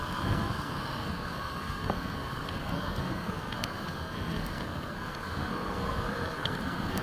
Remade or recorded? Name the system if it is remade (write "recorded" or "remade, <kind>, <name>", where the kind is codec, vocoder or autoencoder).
remade, codec, SNAC